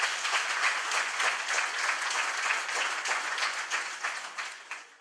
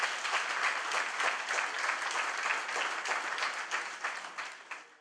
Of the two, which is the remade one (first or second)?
first